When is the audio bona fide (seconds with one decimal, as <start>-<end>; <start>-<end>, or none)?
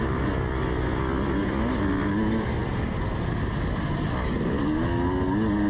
0.0-5.7